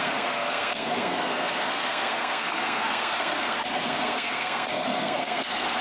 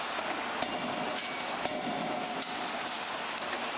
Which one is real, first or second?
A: second